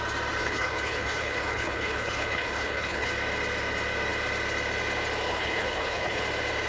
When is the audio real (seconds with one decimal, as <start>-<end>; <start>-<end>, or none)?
0.0-0.4; 3.1-5.3; 6.2-6.7